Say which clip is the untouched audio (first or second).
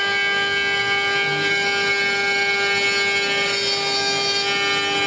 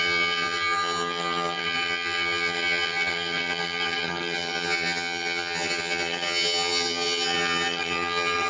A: first